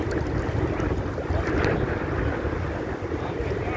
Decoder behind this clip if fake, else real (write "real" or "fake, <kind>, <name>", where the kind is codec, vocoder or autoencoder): real